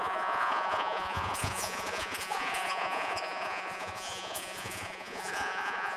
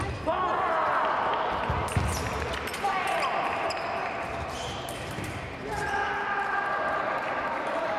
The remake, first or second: first